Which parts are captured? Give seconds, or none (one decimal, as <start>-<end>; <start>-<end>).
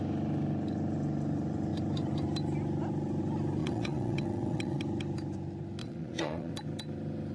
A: 0.0-3.6; 4.8-5.8; 6.5-7.3